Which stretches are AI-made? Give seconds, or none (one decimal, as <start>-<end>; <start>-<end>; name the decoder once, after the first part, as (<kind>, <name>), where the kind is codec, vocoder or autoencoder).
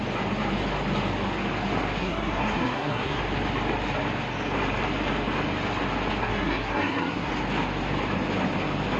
2.0-3.2 (codec, SNAC); 6.2-7.3